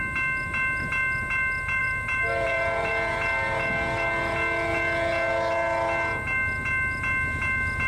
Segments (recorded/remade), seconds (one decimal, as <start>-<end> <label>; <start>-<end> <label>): 0.0-1.8 recorded; 1.8-2.9 remade; 2.9-7.9 recorded